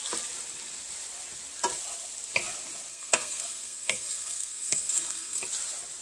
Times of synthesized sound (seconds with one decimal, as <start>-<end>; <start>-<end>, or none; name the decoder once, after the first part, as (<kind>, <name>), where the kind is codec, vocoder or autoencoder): 2.9-5.4 (codec, SNAC)